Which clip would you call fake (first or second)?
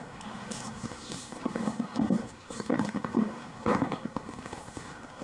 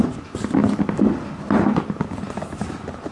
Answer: first